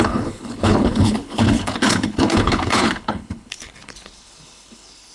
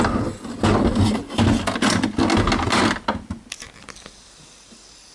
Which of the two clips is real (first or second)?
second